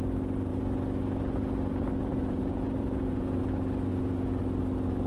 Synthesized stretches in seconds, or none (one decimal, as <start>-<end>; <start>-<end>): 2.1-3.4; 3.9-4.4